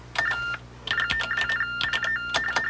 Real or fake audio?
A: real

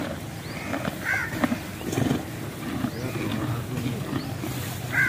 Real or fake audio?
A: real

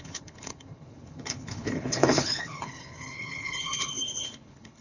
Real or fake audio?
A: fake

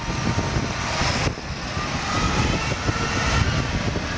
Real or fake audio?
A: real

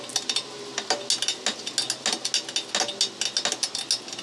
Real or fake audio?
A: real